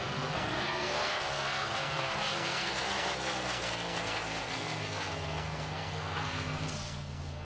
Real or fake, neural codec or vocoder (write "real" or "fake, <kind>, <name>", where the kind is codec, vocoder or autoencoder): fake, codec, SNAC